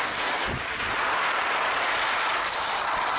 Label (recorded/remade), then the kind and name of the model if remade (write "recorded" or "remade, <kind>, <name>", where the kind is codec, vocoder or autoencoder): recorded